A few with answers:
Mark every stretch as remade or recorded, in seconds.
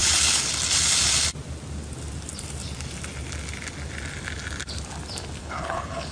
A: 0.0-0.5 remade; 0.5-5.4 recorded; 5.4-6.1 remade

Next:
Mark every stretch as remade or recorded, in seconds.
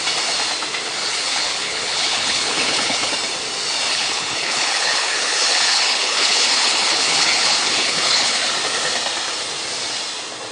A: 0.0-1.1 recorded; 1.1-3.1 remade; 3.1-3.9 recorded; 3.9-8.5 remade; 8.5-10.5 recorded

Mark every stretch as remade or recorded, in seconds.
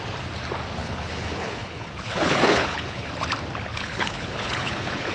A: 0.0-0.8 recorded; 0.8-3.1 remade; 3.1-3.7 recorded; 3.7-5.1 remade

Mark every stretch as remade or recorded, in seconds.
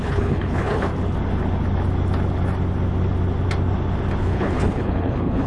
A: 0.0-0.9 remade; 0.9-4.2 recorded; 4.2-5.5 remade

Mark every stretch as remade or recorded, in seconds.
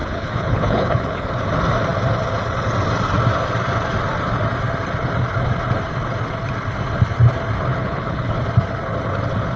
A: 0.0-1.3 remade; 1.3-7.7 recorded; 7.7-8.4 remade; 8.4-9.6 recorded